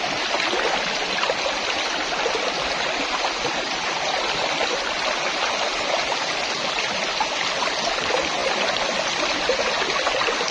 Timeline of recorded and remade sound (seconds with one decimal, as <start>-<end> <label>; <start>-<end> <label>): 0.0-10.5 recorded